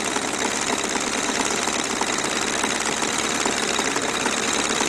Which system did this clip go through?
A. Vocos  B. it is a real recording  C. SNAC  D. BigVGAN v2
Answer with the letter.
B